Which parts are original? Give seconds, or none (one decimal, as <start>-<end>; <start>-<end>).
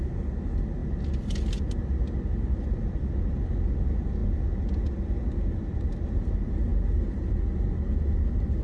0.0-8.6